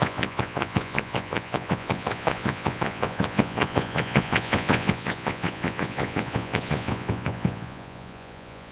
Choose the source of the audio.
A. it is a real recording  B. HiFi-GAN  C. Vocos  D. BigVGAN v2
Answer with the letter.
C